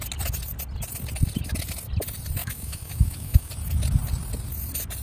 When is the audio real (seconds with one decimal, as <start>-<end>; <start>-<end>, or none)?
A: 0.0-2.4; 3.5-5.0